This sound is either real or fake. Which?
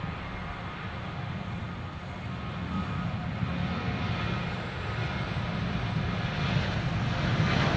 real